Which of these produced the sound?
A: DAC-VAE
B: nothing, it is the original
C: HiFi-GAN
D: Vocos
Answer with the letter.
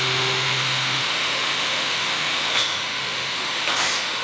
A